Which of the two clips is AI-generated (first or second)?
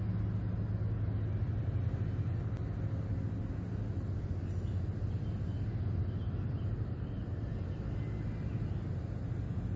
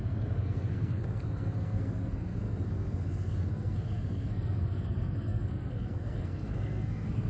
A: second